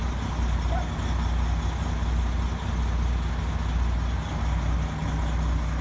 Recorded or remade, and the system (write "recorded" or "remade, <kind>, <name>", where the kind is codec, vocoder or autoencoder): recorded